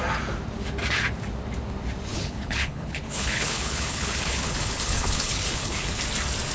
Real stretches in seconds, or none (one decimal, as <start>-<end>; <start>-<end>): 0.0-2.1; 6.0-6.5